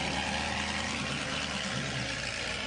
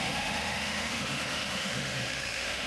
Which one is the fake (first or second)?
second